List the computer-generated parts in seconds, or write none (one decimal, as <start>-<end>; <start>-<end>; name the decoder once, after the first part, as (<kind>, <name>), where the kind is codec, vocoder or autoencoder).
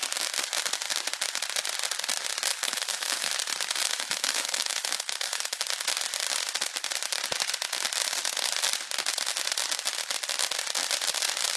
2.5-3.3 (autoencoder, DAC-VAE); 3.8-5.6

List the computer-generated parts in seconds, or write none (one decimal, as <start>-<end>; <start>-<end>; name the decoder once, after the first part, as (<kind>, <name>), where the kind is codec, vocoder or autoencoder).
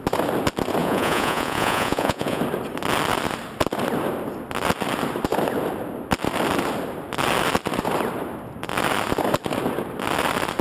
0.8-2.4 (vocoder, Vocos)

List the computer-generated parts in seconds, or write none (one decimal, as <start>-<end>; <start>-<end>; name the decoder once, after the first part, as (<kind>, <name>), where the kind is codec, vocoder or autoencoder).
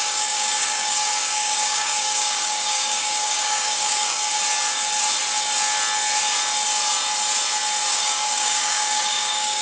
0.0-4.3 (codec, DAC); 7.9-9.6